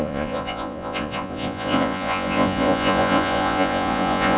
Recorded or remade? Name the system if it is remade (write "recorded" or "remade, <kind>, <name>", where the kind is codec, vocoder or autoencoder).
remade, vocoder, Vocos